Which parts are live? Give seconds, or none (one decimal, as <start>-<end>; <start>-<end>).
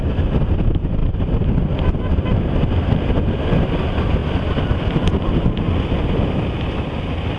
0.0-7.4